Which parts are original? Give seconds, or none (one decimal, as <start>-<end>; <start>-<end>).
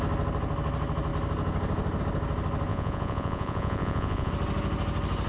0.0-2.7; 4.3-5.3